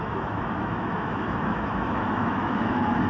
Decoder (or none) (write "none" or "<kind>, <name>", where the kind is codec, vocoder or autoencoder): autoencoder, DAC-VAE